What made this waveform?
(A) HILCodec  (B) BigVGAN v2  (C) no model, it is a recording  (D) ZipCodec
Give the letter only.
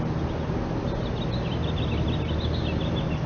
C